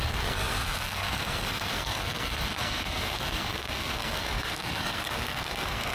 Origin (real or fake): fake